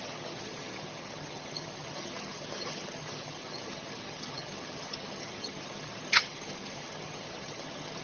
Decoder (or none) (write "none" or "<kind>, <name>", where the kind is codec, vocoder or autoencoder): vocoder, HiFi-GAN